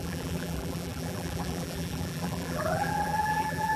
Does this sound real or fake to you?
fake